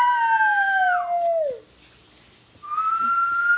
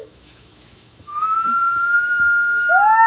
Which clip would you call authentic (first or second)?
first